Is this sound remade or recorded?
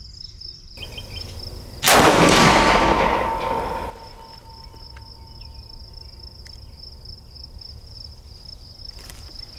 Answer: recorded